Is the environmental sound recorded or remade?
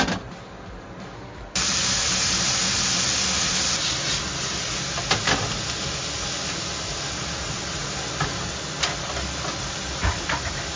recorded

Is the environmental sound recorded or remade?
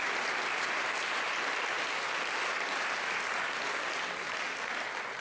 recorded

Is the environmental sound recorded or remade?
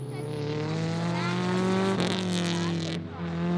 recorded